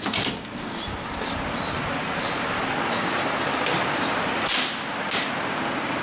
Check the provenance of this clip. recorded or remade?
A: recorded